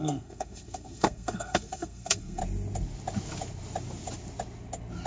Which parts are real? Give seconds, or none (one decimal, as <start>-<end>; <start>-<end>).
2.4-5.1